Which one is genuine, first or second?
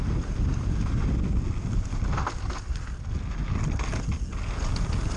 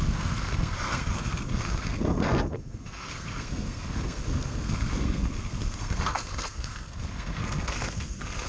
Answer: first